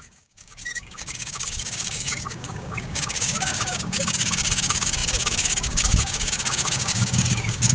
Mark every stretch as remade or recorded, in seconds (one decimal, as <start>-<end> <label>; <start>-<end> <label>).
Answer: 0.0-7.7 remade